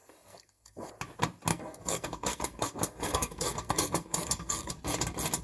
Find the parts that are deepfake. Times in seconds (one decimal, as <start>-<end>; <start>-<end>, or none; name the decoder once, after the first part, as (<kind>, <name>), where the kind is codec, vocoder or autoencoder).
0.0-0.9 (codec, SNAC); 1.5-4.7